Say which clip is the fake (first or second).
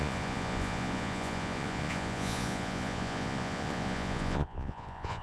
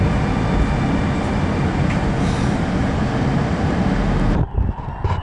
first